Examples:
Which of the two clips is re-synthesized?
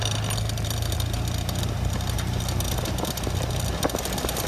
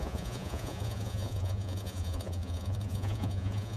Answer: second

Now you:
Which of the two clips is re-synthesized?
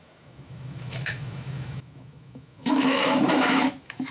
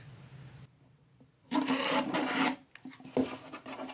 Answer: first